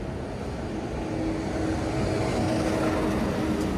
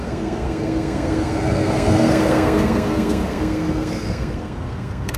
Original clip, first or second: first